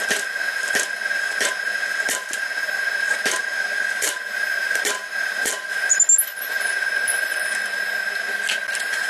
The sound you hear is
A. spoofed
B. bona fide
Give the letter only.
B